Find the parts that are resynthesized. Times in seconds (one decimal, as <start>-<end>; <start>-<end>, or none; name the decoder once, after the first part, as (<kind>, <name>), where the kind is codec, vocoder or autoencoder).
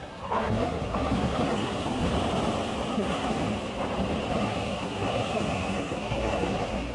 0.0-2.1 (codec, SNAC); 2.9-3.4; 4.3-6.9